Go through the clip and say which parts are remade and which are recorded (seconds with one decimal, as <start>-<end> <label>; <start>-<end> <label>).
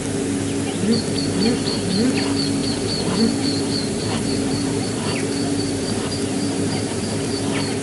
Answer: 0.0-2.6 recorded; 2.6-7.3 remade; 7.3-7.8 recorded